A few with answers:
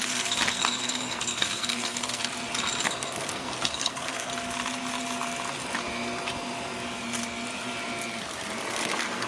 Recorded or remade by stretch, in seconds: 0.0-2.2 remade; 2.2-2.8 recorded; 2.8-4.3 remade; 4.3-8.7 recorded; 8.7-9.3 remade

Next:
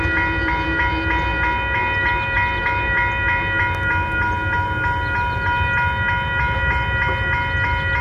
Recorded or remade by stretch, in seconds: 0.0-8.0 recorded

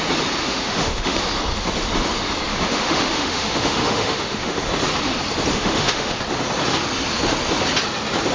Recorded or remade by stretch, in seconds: 0.0-0.4 recorded; 0.4-1.2 remade; 1.2-2.5 recorded; 2.5-4.6 remade; 4.6-5.5 recorded; 5.5-6.2 remade; 6.2-8.3 recorded

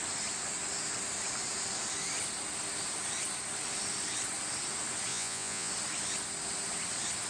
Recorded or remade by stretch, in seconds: 0.0-5.1 recorded; 5.1-5.7 remade; 5.7-7.3 recorded